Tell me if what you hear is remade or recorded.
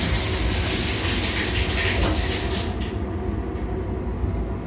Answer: recorded